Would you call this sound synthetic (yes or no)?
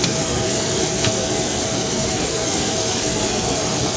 yes